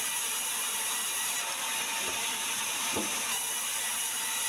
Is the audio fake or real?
real